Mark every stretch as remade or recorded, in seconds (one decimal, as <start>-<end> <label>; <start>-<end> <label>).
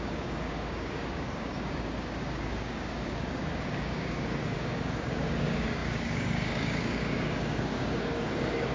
0.0-8.7 remade